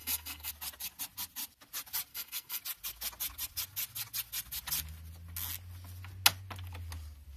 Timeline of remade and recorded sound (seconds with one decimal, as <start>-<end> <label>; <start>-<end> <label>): 0.0-0.5 remade; 0.5-2.1 recorded; 2.1-2.6 remade; 2.6-7.4 recorded